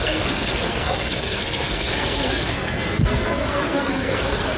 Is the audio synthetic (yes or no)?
yes